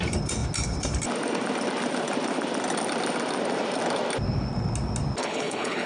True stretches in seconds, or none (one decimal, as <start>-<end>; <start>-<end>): 0.0-5.2